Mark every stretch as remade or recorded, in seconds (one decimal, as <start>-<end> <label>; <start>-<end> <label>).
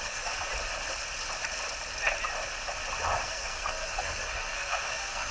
0.0-0.5 remade; 0.5-3.2 recorded; 3.2-5.3 remade